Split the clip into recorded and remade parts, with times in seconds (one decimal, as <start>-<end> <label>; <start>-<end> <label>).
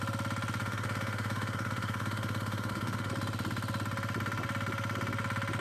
0.0-0.6 recorded; 0.6-3.1 remade; 3.1-5.6 recorded